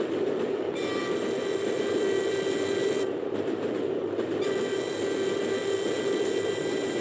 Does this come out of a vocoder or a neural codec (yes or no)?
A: no